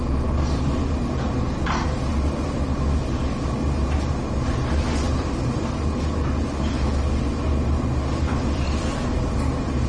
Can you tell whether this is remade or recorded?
recorded